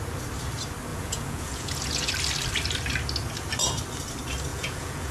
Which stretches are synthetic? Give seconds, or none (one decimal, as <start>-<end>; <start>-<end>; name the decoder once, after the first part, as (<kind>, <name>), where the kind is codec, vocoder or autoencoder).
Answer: 0.9-2.1 (vocoder, Vocos); 4.5-5.1